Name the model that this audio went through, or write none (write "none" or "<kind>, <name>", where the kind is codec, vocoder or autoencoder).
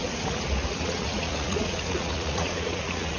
vocoder, Vocos